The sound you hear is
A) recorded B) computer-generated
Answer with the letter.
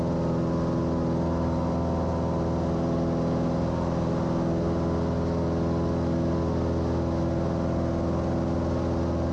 A